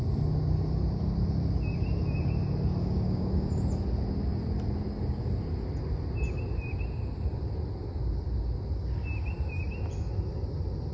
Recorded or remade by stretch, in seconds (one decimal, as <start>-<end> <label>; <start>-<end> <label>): 0.0-2.8 recorded; 2.8-3.5 remade; 3.5-10.9 recorded